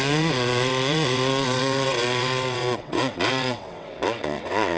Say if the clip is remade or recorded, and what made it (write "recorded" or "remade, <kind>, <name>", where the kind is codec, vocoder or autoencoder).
remade, vocoder, WaveNeXt